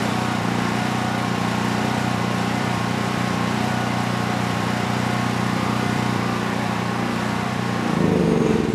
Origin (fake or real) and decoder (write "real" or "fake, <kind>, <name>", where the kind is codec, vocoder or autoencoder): fake, vocoder, BigVGAN v2